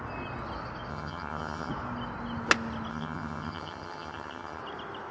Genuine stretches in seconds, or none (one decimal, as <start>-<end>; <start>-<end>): 0.0-0.9; 1.7-2.9; 4.6-5.1

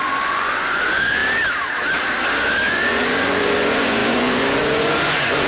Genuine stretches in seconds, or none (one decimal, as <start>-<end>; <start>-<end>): 1.2-2.7